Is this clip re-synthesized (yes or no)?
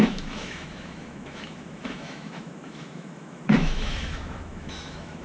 yes